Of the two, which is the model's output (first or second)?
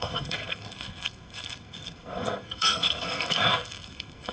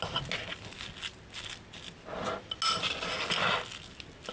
first